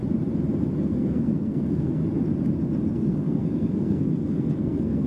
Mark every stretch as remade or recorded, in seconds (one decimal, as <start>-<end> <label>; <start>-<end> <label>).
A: 0.0-0.8 recorded; 0.8-2.0 remade; 2.0-2.9 recorded; 2.9-5.1 remade